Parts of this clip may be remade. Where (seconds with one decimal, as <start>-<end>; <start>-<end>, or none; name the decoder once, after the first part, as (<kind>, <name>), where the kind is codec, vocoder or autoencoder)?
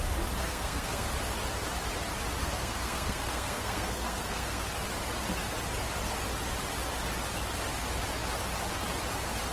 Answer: 0.4-1.1 (codec, SNAC); 2.4-4.6